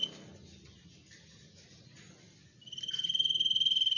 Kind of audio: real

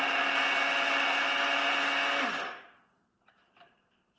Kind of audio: real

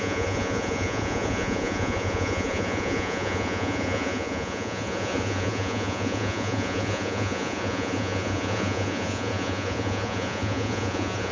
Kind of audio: fake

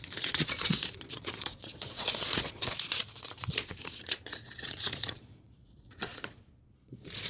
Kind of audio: fake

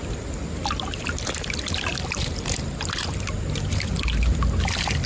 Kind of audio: real